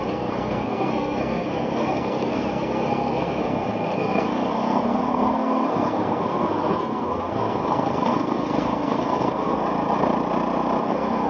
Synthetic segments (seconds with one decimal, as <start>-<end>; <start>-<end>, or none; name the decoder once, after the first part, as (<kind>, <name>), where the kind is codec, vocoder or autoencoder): 0.0-9.6 (codec, SNAC); 10.8-11.3